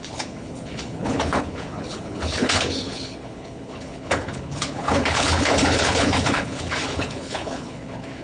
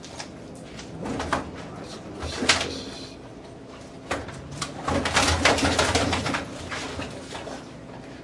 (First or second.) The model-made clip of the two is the first